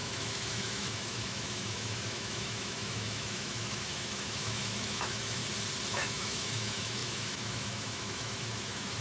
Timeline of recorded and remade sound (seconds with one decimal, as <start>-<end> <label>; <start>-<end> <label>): 0.0-5.4 remade; 5.4-5.9 recorded; 5.9-9.0 remade